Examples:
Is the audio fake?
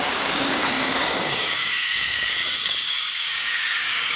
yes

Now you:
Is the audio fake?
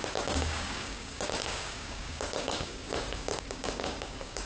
yes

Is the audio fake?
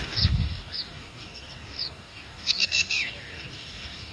yes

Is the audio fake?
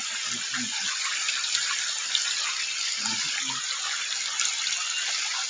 no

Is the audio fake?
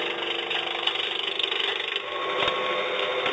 no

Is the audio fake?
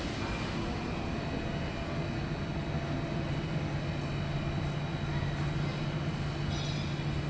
no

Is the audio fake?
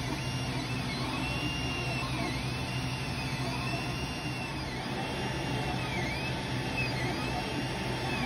no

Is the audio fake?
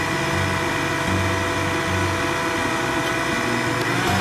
no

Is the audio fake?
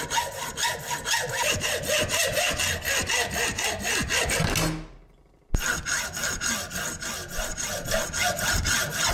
no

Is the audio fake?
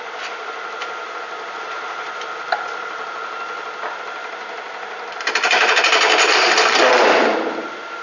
no